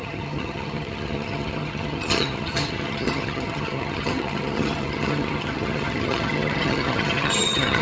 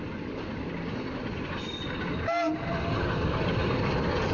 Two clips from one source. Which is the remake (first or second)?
first